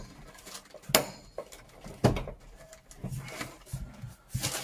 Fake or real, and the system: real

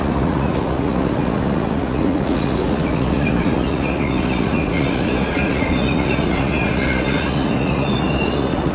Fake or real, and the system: fake, vocoder, Vocos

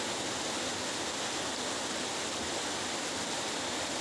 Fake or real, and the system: real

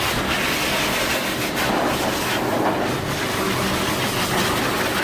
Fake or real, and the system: real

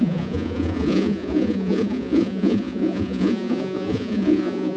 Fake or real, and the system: fake, vocoder, Vocos